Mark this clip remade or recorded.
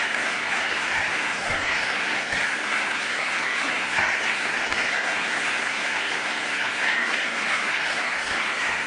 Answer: remade